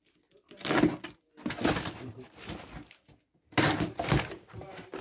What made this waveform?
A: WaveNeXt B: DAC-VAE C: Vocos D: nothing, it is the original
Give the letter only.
D